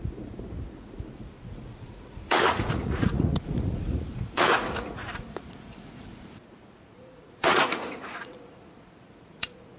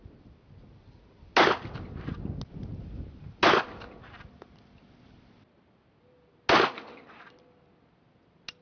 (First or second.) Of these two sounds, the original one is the second